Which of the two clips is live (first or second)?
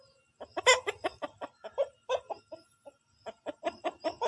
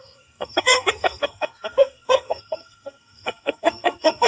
first